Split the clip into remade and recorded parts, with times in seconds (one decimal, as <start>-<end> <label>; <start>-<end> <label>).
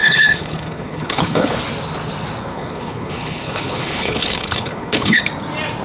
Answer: 0.0-1.6 remade; 1.6-2.5 recorded; 2.5-5.2 remade; 5.2-5.8 recorded